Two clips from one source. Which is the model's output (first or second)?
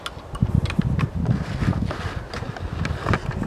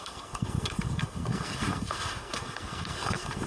second